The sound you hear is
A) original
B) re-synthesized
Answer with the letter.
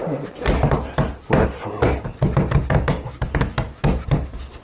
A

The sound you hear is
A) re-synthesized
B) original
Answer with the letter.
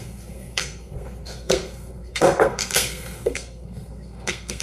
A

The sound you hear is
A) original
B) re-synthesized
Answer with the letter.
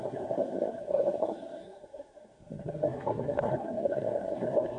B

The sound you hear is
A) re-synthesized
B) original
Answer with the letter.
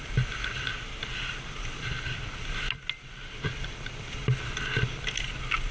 B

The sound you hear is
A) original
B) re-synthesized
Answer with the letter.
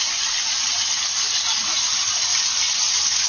A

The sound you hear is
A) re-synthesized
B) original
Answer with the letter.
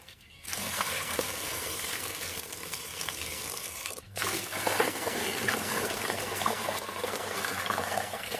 A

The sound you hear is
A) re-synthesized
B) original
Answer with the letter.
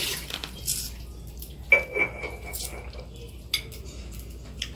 B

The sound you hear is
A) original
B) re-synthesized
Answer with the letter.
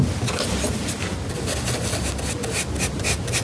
A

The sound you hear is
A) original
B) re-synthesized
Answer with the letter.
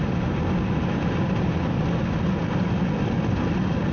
A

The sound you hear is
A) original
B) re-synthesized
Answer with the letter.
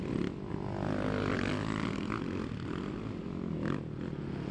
A